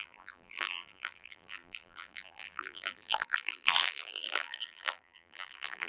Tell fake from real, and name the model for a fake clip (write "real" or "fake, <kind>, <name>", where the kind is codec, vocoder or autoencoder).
fake, vocoder, BigVGAN v2